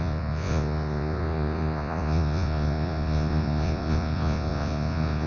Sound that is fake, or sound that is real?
fake